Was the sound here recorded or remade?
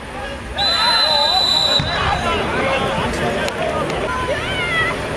recorded